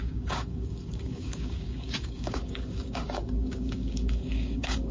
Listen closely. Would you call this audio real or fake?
fake